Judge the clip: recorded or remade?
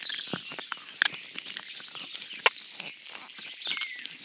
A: recorded